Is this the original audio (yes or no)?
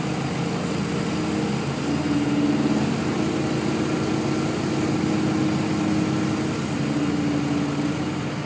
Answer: yes